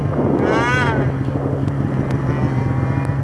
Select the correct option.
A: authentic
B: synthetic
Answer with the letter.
A